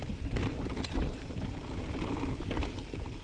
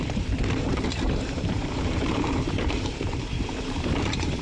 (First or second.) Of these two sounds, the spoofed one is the second